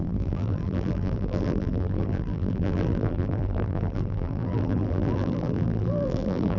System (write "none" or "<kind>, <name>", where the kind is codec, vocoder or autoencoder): vocoder, BigVGAN v2